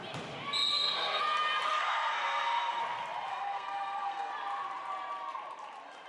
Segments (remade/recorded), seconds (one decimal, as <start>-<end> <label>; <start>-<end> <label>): 0.0-0.7 recorded; 0.7-1.2 remade; 1.2-1.7 recorded; 1.7-2.8 remade; 2.8-3.3 recorded; 3.3-4.3 remade; 4.3-6.1 recorded